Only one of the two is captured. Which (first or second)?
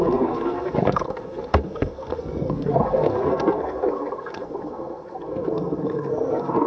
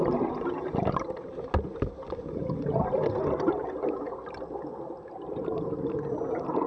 second